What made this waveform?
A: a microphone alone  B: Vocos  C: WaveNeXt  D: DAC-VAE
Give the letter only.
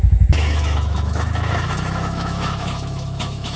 D